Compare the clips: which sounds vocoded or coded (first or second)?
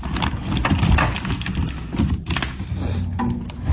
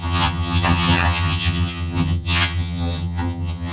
second